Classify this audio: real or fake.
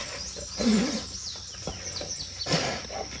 real